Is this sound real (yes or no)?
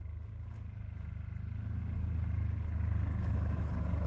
yes